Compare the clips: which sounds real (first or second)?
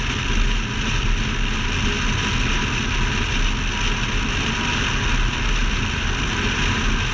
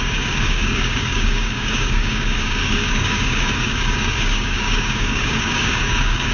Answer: first